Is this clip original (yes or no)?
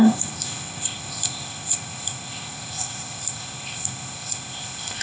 no